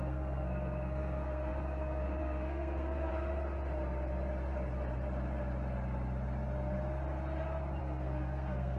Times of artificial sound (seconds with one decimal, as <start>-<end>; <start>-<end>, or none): 0.0-3.1; 7.8-8.8